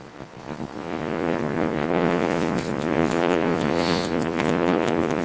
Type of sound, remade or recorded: remade